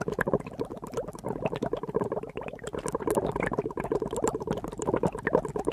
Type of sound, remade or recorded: recorded